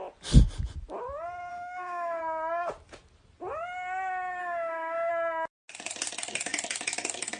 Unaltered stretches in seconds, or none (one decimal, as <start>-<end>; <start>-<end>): 0.0-1.5; 2.2-4.4; 5.1-7.4